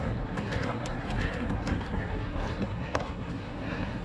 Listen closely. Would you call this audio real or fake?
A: fake